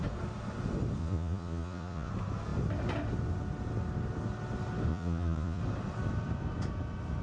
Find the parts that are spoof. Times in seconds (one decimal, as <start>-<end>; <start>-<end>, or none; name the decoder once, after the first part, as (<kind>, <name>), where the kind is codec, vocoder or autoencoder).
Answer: 1.0-2.1 (vocoder, Vocos); 4.9-5.6